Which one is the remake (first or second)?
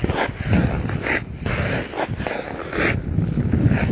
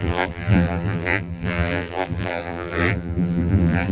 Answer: second